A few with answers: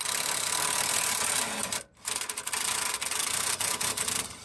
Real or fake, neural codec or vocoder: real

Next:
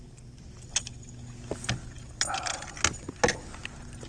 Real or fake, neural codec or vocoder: real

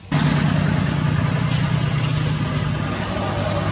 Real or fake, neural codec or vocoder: real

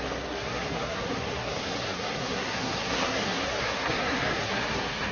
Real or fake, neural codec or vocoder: fake, codec, SNAC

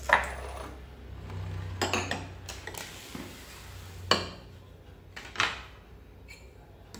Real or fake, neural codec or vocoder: real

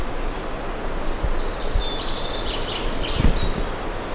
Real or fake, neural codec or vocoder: real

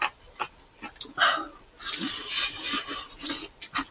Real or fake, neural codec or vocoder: real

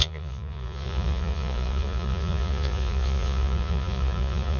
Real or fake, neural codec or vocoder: fake, vocoder, Vocos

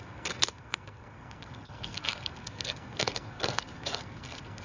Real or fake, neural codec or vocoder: fake, codec, SNAC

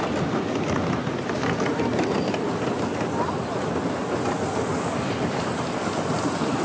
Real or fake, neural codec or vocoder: real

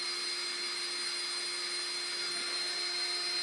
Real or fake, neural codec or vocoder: real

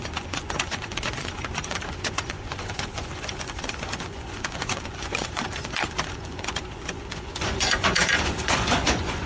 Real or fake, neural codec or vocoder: fake, vocoder, Vocos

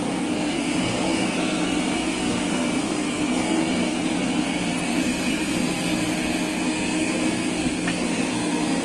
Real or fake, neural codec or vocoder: fake, codec, SNAC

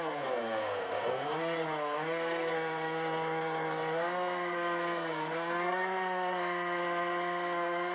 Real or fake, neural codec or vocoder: fake, codec, SNAC